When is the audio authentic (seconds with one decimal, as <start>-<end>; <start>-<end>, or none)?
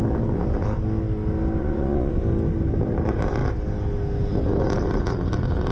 0.0-1.6; 2.2-5.7